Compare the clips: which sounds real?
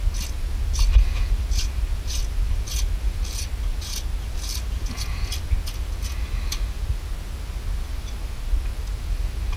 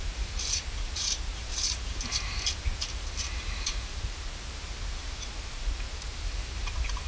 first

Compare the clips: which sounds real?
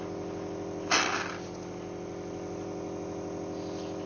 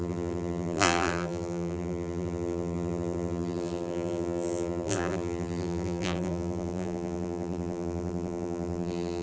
first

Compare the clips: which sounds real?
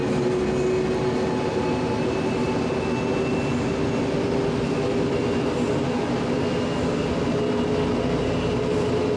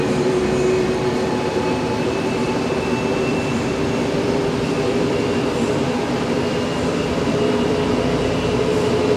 first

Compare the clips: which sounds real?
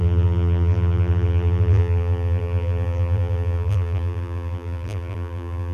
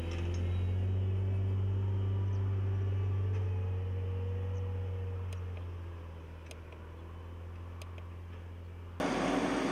second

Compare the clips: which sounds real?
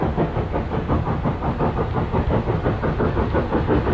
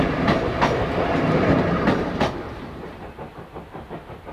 first